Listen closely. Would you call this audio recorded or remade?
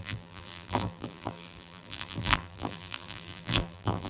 remade